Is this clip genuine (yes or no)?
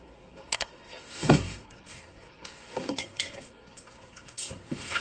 no